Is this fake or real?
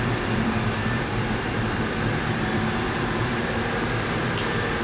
fake